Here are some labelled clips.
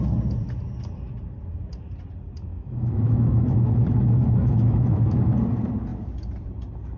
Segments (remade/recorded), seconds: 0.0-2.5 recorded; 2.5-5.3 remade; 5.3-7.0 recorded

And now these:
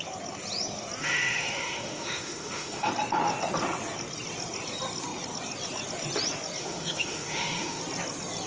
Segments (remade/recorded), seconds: 0.0-1.0 recorded; 1.0-2.9 remade; 2.9-6.6 recorded; 6.6-7.8 remade; 7.8-8.5 recorded

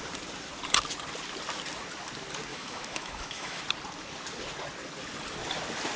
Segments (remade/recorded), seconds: 0.0-2.5 recorded; 2.5-3.6 remade; 3.6-6.0 recorded